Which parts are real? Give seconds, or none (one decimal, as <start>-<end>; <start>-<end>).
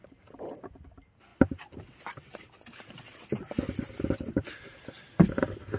0.0-5.8